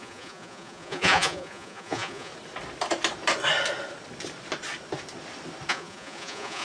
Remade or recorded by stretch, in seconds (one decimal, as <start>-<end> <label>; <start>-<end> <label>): 0.0-2.3 remade; 2.3-5.7 recorded; 5.7-6.6 remade

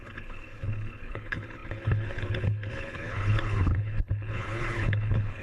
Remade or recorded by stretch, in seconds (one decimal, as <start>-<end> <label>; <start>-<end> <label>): 0.0-5.4 remade

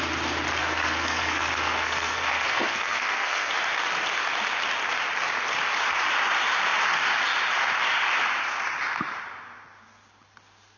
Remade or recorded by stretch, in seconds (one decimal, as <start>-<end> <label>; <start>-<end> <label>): 0.0-0.6 recorded; 0.6-3.5 remade; 3.5-10.8 recorded

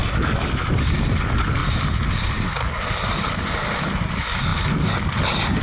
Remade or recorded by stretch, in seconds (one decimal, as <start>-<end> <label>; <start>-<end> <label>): 0.0-5.6 recorded

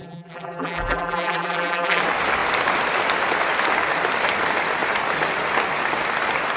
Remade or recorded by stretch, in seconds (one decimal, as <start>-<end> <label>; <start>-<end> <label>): 0.0-2.0 remade; 2.0-6.6 recorded

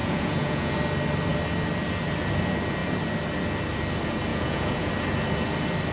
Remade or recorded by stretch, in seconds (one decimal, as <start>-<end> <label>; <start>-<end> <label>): 0.0-0.7 remade; 0.7-4.3 recorded; 4.3-4.9 remade; 4.9-5.9 recorded

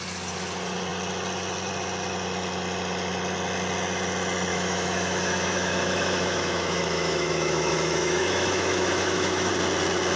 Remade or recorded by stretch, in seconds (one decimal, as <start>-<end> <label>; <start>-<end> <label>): 0.0-4.5 recorded; 4.5-9.5 remade; 9.5-10.2 recorded

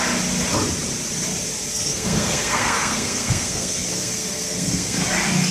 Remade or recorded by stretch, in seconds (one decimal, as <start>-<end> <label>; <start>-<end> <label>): 0.0-1.7 recorded; 1.7-5.0 remade; 5.0-5.5 recorded